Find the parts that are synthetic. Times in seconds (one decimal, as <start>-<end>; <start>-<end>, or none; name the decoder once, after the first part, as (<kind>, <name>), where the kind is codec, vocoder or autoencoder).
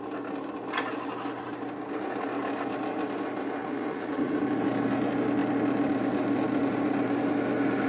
3.6-4.4 (vocoder, Vocos)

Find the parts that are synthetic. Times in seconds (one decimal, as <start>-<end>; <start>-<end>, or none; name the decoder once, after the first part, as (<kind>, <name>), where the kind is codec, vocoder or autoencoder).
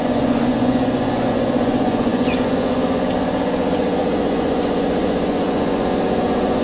0.0-6.6 (vocoder, Vocos)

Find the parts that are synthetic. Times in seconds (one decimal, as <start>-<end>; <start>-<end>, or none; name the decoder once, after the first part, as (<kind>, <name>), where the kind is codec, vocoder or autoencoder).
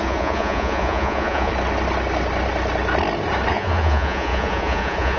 0.0-1.5 (vocoder, Vocos); 3.5-5.2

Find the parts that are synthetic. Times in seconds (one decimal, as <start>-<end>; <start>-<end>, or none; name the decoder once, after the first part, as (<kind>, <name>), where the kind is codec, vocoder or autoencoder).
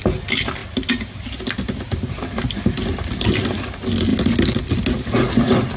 none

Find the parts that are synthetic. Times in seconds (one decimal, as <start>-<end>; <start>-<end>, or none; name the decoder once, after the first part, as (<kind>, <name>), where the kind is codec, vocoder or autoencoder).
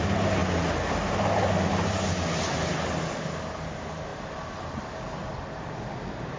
none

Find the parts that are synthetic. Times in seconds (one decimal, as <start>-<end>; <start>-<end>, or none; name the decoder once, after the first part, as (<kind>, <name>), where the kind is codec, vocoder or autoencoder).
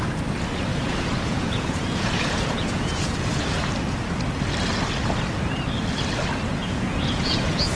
0.7-3.7 (vocoder, Vocos); 6.6-7.8